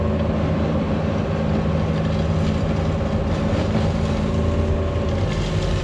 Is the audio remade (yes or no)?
no